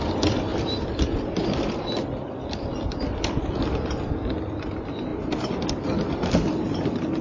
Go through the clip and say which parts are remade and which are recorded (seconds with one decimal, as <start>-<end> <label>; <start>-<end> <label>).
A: 0.0-5.1 recorded; 5.1-5.6 remade; 5.6-7.2 recorded